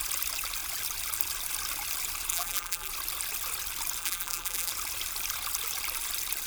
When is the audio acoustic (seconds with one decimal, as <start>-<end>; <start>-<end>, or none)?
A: 0.0-2.3; 2.9-4.0; 4.7-6.5